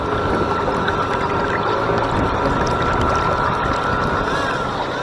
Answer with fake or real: real